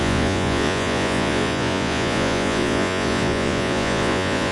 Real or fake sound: fake